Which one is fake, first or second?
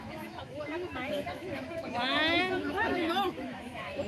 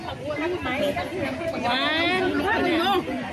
first